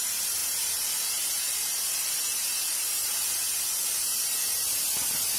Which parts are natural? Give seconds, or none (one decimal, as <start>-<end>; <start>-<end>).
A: none